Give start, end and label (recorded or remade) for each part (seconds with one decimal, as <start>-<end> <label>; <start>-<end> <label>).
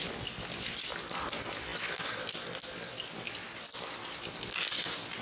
0.0-5.2 recorded